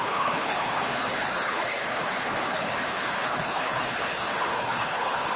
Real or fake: fake